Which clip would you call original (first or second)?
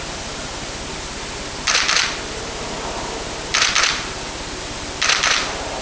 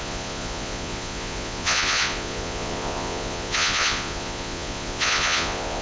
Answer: first